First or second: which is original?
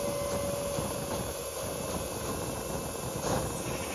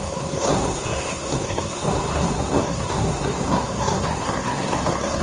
first